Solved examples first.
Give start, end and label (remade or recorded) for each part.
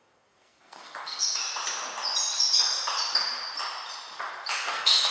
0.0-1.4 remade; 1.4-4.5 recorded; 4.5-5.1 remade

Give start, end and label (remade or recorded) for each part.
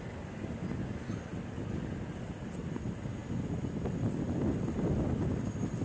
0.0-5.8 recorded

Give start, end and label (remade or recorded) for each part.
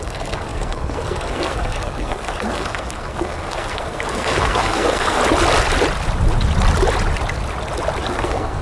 0.0-5.2 remade; 5.2-8.1 recorded; 8.1-8.6 remade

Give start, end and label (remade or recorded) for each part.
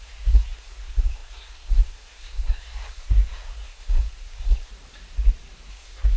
0.0-4.7 remade; 4.7-5.7 recorded; 5.7-6.2 remade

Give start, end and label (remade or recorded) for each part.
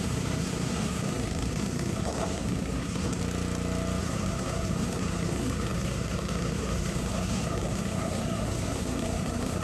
0.0-3.2 remade; 3.2-4.0 recorded; 4.0-9.6 remade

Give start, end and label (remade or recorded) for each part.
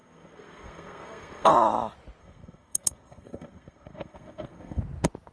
0.0-1.5 remade; 1.5-2.2 recorded; 2.2-4.8 remade; 4.8-5.3 recorded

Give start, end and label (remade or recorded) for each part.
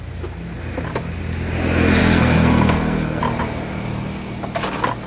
0.0-2.0 recorded; 2.0-3.2 remade; 3.2-5.1 recorded